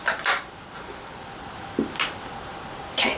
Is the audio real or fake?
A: real